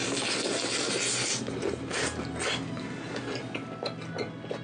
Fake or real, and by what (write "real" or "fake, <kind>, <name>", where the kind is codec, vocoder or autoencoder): real